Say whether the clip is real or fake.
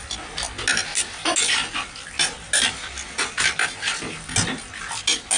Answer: real